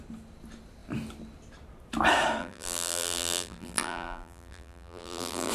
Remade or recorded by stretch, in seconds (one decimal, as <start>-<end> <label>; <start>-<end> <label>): 0.0-2.4 recorded; 2.4-5.5 remade